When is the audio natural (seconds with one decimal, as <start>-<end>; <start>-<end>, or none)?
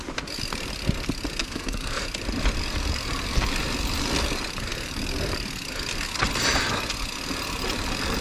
0.0-1.4; 2.0-8.2